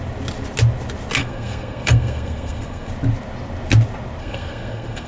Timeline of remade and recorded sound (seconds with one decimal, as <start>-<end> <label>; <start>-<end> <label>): 0.0-1.2 recorded; 1.2-2.9 remade; 2.9-4.2 recorded; 4.2-5.1 remade